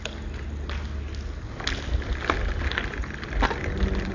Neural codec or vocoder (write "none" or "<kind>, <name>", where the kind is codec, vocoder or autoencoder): none